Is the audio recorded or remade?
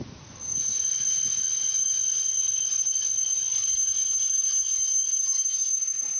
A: recorded